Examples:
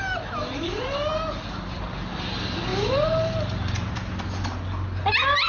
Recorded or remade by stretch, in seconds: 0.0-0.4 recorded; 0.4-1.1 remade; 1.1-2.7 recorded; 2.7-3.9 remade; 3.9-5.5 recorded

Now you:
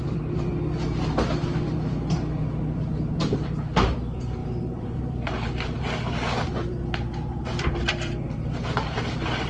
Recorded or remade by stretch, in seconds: 0.0-0.5 remade; 0.5-3.2 recorded; 3.2-9.5 remade

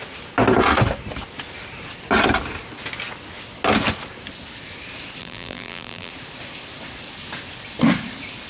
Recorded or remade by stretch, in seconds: 0.0-5.2 recorded; 5.2-6.1 remade; 6.1-8.5 recorded

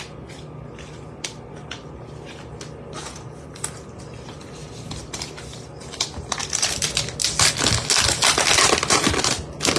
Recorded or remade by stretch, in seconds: 0.0-9.8 recorded

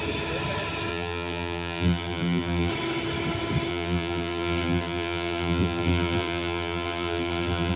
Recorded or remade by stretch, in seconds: 0.0-0.9 recorded; 0.9-2.7 remade; 2.7-3.7 recorded; 3.7-7.8 remade

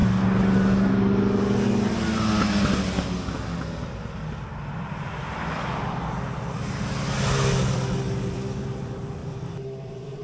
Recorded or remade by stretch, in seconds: 0.0-9.2 recorded; 9.2-10.2 remade